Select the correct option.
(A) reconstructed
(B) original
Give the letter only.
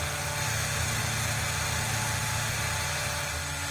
B